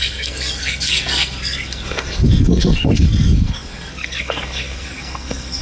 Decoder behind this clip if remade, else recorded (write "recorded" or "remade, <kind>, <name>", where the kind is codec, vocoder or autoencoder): remade, codec, SNAC